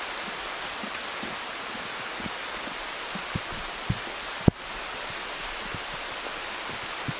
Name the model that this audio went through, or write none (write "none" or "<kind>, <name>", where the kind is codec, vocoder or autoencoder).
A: none